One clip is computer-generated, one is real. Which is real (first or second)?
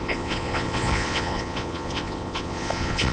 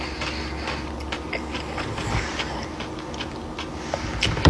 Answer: second